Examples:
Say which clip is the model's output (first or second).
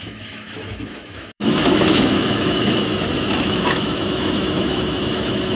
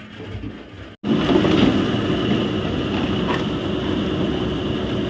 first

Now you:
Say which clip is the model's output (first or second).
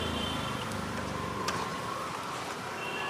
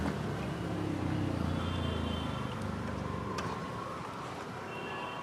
first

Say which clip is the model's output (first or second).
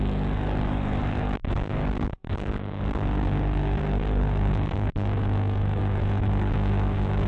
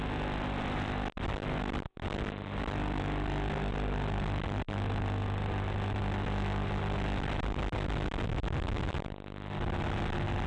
first